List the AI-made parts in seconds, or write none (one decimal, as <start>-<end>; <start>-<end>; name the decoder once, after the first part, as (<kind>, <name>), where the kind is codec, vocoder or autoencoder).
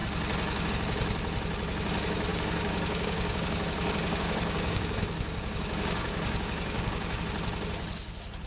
2.3-7.2 (codec, DAC)